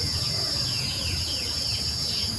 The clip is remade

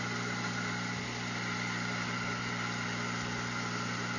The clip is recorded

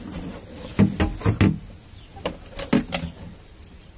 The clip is recorded